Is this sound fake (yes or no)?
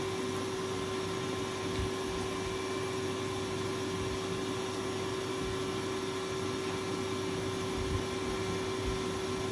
no